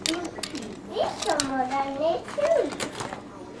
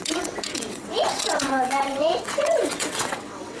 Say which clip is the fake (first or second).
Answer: second